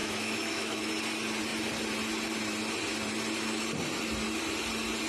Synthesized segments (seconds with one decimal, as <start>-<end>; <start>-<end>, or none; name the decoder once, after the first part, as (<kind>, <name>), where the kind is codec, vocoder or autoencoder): 0.0-0.9 (autoencoder, DAC-VAE)